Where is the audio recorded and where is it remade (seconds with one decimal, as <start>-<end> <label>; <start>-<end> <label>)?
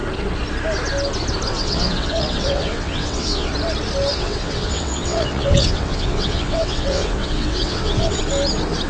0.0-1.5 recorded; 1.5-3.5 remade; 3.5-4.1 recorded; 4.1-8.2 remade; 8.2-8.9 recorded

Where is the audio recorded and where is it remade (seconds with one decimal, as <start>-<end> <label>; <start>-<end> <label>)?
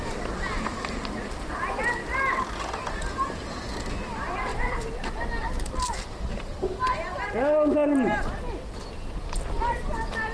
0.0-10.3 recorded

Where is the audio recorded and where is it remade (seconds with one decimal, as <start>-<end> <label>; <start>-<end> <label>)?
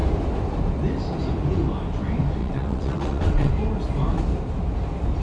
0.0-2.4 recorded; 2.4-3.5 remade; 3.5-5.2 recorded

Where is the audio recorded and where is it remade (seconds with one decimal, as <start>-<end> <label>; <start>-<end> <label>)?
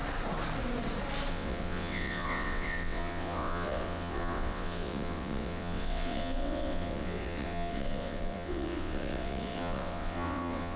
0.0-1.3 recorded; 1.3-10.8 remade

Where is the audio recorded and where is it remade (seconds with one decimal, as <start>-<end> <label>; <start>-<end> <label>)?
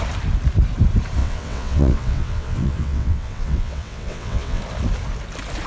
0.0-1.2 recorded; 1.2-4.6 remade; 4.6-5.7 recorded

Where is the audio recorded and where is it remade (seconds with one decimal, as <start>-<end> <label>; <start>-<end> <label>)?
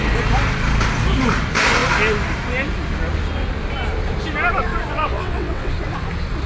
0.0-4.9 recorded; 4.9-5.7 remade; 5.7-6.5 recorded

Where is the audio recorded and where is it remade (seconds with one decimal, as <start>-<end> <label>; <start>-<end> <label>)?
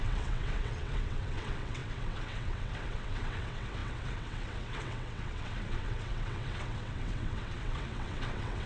0.0-8.7 remade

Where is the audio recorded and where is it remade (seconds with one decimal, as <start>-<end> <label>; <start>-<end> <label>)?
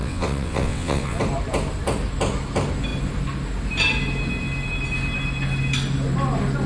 0.0-1.2 remade; 1.2-6.7 recorded